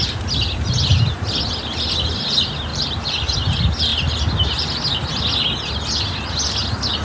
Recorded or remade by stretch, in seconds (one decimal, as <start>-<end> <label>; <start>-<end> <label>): 0.0-2.7 recorded; 2.7-3.3 remade; 3.3-7.0 recorded